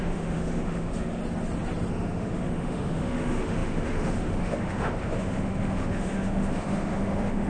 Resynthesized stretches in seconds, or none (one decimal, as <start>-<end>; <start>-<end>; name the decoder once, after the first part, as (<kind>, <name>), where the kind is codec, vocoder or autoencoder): 0.0-1.2 (autoencoder, DAC-VAE); 1.9-7.5